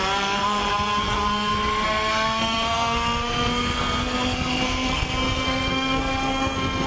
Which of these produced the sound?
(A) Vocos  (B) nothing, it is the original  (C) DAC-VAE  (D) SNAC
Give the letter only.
D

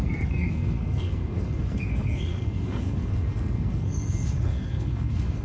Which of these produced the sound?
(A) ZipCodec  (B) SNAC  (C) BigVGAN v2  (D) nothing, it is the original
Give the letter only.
B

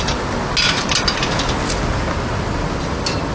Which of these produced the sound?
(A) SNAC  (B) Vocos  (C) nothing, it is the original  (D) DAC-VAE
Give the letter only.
C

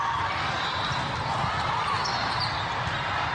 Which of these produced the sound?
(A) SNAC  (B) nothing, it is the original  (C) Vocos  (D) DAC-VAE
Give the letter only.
B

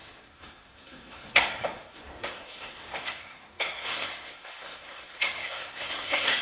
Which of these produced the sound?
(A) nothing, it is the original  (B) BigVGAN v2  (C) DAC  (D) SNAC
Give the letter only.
D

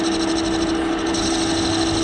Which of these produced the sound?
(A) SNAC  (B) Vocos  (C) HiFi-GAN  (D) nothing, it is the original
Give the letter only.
D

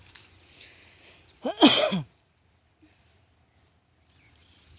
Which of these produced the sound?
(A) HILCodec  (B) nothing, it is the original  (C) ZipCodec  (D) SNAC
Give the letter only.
B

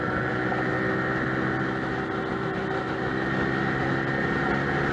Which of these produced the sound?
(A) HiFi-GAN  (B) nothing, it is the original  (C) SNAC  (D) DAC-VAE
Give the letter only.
B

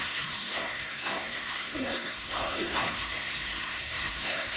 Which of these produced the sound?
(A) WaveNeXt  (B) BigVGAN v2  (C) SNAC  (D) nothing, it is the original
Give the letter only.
C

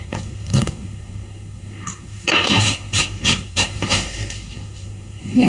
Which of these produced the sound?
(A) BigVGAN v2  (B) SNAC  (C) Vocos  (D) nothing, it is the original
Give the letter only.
B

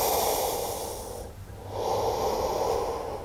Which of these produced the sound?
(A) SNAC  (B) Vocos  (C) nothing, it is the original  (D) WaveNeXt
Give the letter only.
C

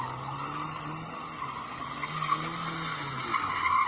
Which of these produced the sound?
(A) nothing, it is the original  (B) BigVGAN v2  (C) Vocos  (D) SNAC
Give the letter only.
A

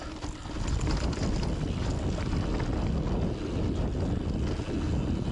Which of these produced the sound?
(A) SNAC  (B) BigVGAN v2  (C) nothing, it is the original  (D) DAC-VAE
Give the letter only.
C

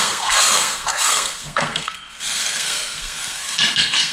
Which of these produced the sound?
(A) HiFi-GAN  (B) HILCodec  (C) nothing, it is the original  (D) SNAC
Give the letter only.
D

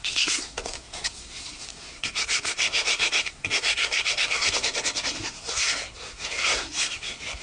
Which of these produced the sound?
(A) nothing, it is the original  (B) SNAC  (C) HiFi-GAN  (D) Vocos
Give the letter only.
B